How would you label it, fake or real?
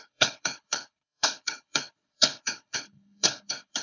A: fake